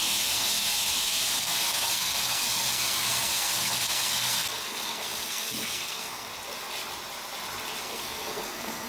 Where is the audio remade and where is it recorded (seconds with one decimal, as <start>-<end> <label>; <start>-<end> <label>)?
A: 0.0-6.3 remade; 6.3-7.8 recorded; 7.8-8.9 remade